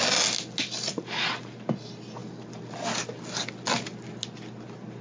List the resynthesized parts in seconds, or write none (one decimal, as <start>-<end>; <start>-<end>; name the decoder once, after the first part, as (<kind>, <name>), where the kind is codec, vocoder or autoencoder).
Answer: none